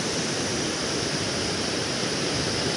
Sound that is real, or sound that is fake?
fake